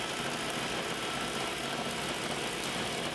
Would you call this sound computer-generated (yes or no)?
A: no